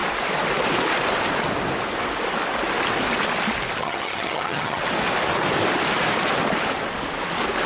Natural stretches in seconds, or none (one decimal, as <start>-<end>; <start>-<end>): 0.0-3.8; 4.8-7.7